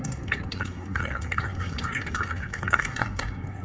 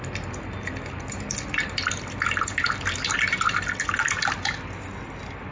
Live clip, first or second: second